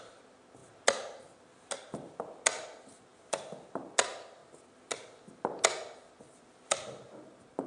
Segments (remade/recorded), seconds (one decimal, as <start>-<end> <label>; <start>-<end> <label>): 0.0-7.7 recorded